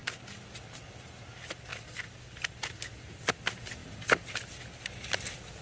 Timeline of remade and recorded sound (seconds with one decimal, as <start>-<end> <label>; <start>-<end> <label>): 0.0-5.6 recorded

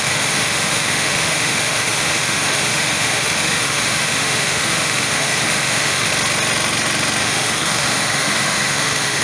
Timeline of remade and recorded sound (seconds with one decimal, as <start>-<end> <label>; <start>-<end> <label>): 0.0-6.1 remade; 6.1-7.2 recorded; 7.2-9.2 remade